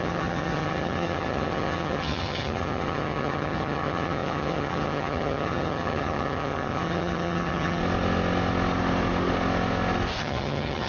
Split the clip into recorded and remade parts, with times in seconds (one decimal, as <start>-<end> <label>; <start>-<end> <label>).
0.0-7.8 remade; 7.8-10.2 recorded; 10.2-10.9 remade